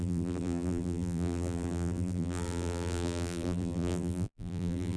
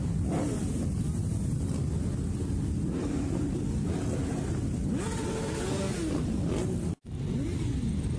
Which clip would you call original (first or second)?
second